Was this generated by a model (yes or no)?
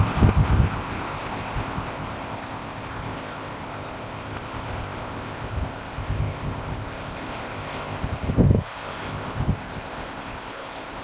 yes